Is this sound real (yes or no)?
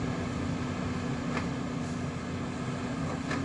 yes